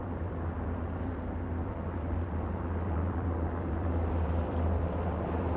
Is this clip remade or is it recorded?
remade